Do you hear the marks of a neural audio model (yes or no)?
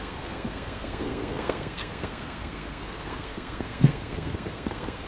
yes